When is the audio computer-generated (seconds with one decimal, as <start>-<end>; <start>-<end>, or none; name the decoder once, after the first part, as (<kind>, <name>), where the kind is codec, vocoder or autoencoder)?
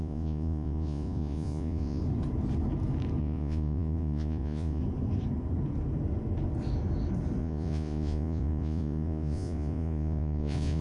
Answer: 0.0-2.0 (vocoder, Vocos); 3.2-4.8; 7.4-10.8